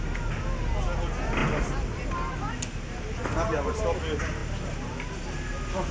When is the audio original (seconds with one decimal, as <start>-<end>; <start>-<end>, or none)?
0.0-5.9